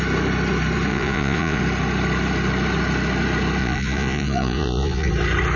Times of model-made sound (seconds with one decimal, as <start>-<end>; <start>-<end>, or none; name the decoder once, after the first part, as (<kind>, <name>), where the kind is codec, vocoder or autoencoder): 0.9-1.6 (vocoder, Vocos); 3.6-5.1